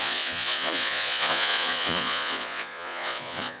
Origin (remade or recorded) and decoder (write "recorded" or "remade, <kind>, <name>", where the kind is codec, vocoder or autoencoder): remade, vocoder, Vocos